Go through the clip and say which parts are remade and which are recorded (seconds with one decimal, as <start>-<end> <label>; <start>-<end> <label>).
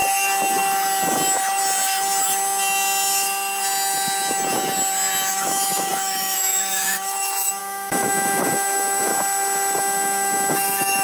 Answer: 0.0-5.3 recorded; 5.3-9.1 remade; 9.1-9.8 recorded; 9.8-11.0 remade